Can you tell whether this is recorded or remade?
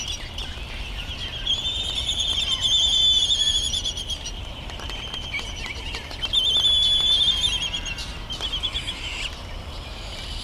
recorded